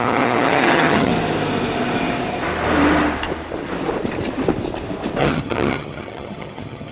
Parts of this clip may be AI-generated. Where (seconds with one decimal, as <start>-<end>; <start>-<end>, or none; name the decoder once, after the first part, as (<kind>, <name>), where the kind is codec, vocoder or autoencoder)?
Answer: 0.0-1.1 (vocoder, HiFi-GAN); 5.2-6.9